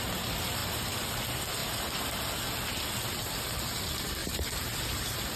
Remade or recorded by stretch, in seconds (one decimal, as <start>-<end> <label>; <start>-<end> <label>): 0.0-0.6 recorded; 0.6-1.2 remade; 1.2-4.2 recorded; 4.2-5.4 remade